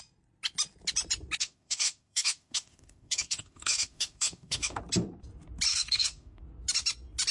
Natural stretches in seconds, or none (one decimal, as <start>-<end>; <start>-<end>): 0.0-1.4; 4.8-5.7; 6.4-7.3